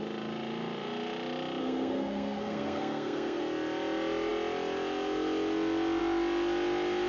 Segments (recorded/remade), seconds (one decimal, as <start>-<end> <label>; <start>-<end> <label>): 0.0-1.6 recorded; 1.6-3.4 remade; 3.4-7.1 recorded